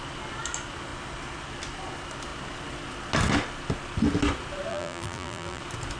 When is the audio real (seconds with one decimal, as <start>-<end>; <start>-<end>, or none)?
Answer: 0.0-4.7; 5.6-6.0